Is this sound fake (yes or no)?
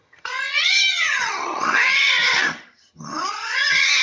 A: yes